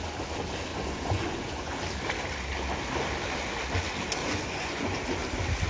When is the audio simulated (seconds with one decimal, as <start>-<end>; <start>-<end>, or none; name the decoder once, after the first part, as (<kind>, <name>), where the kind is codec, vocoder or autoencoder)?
0.7-1.8 (vocoder, Vocos); 4.2-5.0